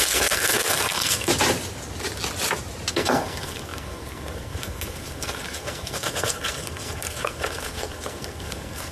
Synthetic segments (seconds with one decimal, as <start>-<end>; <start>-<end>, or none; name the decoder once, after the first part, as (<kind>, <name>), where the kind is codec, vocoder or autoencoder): 0.0-1.3 (codec, SNAC); 2.9-8.9